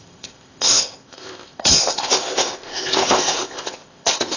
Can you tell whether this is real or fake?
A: fake